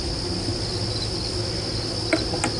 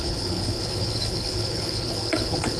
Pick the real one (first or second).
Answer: first